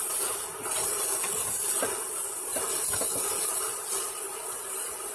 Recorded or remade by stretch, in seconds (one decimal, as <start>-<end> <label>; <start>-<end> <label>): 0.0-5.1 recorded